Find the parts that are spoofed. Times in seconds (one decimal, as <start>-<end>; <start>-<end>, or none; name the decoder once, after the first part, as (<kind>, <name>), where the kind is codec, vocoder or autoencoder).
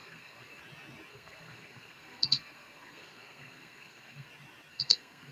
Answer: 0.0-0.6 (codec, SNAC); 1.1-4.3; 4.7-5.3